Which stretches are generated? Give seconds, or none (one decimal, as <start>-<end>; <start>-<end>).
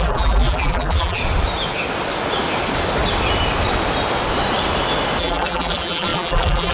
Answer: 0.0-1.2; 5.2-6.7